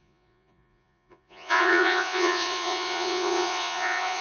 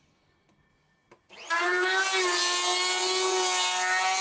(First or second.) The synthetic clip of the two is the first